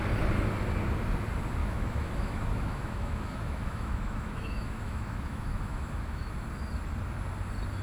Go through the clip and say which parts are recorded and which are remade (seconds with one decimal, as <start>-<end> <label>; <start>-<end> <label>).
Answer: 0.0-1.6 recorded; 1.6-6.3 remade; 6.3-7.8 recorded